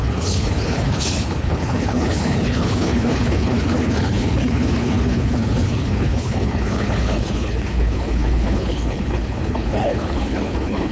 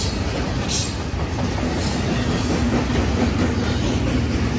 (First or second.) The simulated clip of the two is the first